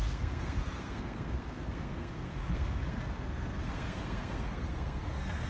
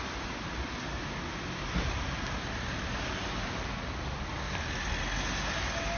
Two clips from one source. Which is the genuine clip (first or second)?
second